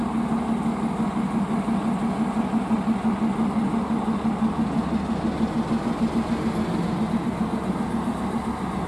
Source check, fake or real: real